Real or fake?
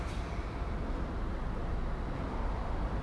real